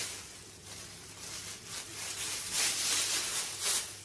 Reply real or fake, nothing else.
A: real